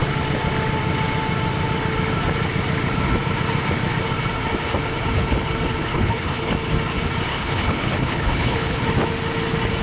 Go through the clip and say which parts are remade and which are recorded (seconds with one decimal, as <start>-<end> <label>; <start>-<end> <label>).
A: 0.0-5.9 recorded; 5.9-6.5 remade; 6.5-7.3 recorded; 7.3-8.8 remade; 8.8-9.8 recorded